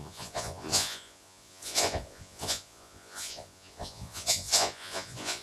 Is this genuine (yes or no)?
no